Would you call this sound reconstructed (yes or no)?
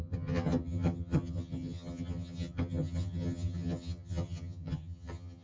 yes